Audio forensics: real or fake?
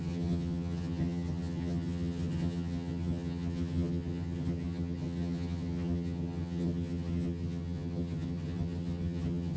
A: fake